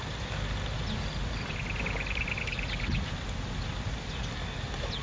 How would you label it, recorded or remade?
recorded